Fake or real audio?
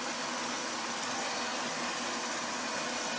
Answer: real